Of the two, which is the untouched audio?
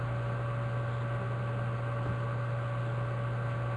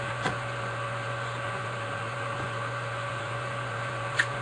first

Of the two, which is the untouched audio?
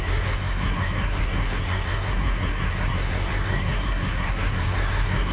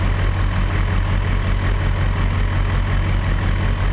second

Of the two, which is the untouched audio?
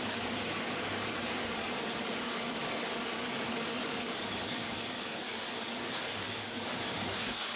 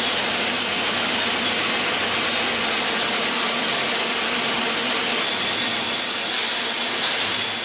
second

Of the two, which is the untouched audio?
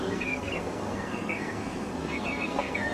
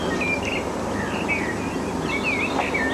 second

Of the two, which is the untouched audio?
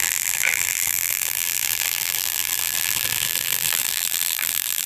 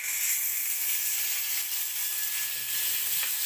second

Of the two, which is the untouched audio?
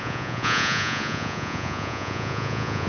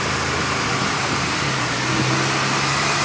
second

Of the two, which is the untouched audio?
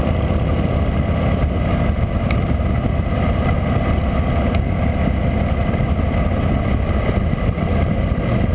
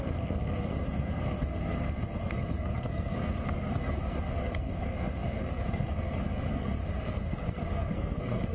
first